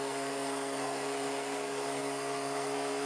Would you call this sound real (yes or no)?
no